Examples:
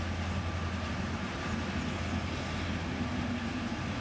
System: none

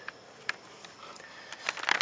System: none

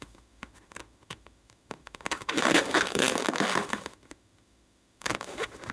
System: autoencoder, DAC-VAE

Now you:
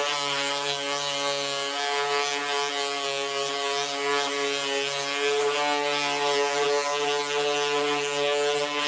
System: none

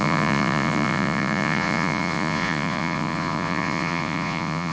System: vocoder, Vocos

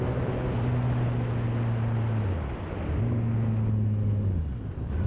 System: none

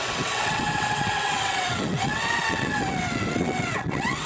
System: vocoder, WaveNeXt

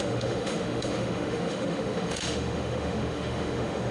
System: autoencoder, DAC-VAE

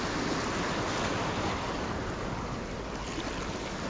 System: none